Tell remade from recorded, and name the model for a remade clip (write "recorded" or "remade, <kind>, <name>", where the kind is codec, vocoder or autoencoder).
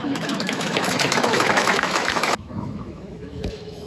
remade, autoencoder, DAC-VAE